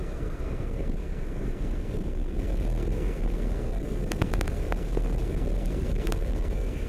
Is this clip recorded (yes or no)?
no